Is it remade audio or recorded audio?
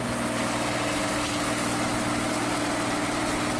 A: recorded